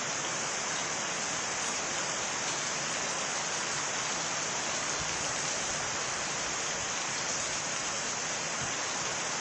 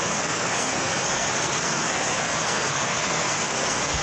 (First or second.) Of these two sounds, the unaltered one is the first